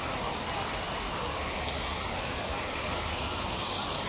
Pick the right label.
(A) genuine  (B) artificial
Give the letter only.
A